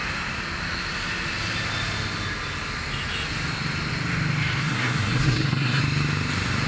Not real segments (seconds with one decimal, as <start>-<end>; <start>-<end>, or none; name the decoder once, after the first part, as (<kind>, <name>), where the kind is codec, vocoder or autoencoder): 4.6-5.8 (codec, SNAC)